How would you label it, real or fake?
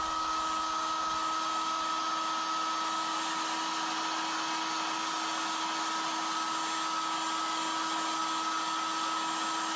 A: real